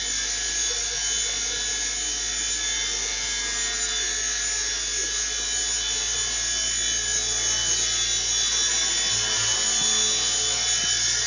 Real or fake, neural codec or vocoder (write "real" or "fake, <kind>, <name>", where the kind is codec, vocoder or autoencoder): real